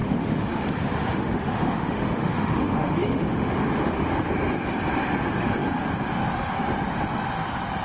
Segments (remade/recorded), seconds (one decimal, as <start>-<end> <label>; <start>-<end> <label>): 0.0-4.3 remade; 4.3-7.8 recorded